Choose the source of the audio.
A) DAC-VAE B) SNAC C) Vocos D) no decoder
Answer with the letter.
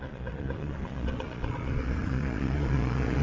C